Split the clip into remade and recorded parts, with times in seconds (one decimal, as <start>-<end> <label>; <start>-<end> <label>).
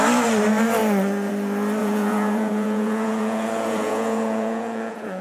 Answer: 0.0-1.8 recorded; 1.8-5.2 remade